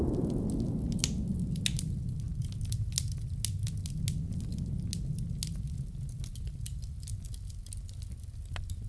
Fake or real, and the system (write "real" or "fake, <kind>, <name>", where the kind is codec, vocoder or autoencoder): real